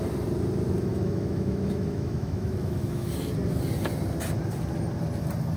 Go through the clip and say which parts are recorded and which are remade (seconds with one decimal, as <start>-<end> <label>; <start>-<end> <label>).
0.0-0.9 recorded; 0.9-3.1 remade; 3.1-5.6 recorded